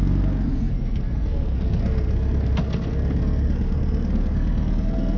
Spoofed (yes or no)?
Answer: yes